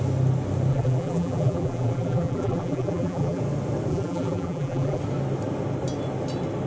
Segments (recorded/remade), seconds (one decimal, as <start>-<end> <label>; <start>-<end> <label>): 0.0-0.7 recorded; 0.7-3.4 remade; 3.4-3.9 recorded; 3.9-5.0 remade; 5.0-6.7 recorded